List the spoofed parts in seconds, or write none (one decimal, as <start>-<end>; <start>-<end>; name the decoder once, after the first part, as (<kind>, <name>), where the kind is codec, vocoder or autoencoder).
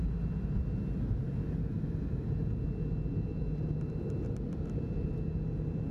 none